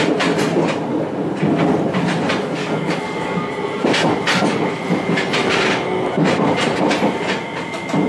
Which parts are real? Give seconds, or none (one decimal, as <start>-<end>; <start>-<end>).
0.0-2.6; 3.5-8.1